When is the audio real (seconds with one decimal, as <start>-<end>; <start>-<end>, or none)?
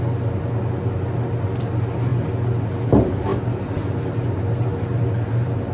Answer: 0.0-5.7